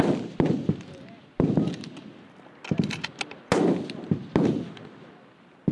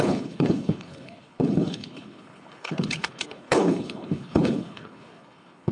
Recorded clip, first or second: first